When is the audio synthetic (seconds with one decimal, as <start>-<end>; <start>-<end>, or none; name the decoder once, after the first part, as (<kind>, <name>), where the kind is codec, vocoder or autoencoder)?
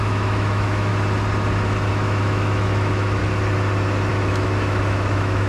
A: 0.0-0.9 (autoencoder, DAC-VAE); 1.9-3.2; 4.1-5.5